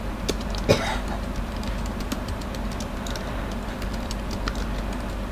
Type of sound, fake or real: real